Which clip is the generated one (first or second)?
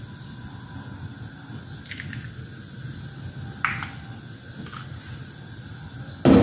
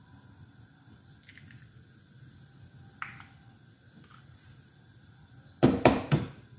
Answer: second